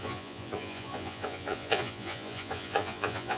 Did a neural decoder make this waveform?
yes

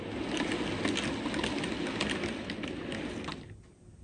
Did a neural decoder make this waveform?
no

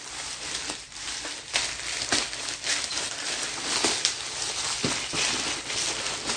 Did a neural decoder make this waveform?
no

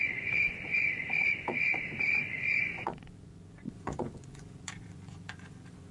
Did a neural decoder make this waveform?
yes